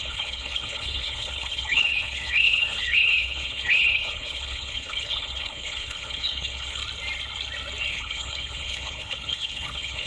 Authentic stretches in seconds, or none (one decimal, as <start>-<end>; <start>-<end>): 6.8-7.9